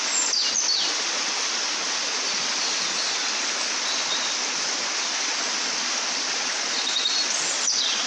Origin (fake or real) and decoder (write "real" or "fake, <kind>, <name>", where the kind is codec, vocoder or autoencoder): real